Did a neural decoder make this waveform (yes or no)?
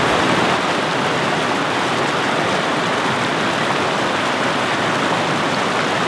no